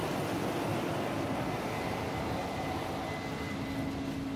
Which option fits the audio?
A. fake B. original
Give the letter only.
B